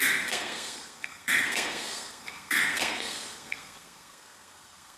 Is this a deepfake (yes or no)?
yes